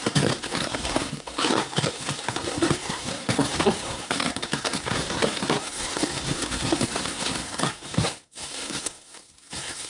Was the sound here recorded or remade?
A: remade